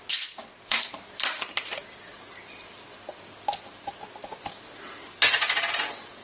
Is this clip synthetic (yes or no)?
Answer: no